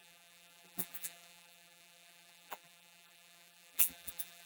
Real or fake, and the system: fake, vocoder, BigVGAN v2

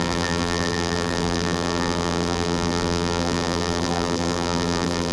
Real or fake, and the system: fake, vocoder, BigVGAN v2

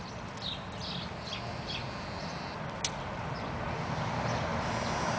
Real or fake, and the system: real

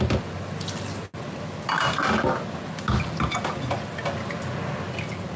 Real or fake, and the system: real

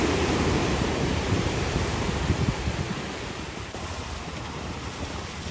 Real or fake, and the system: fake, vocoder, BigVGAN v2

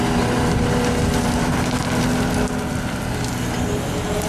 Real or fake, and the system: real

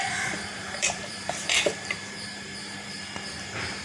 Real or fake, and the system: fake, vocoder, BigVGAN v2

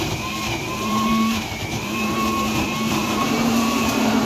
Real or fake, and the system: fake, vocoder, BigVGAN v2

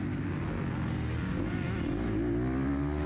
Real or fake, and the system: real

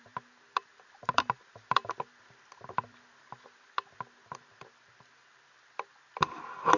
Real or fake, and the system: fake, vocoder, BigVGAN v2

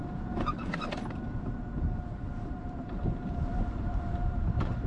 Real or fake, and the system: fake, vocoder, BigVGAN v2